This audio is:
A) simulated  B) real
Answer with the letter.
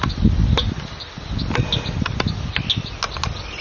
B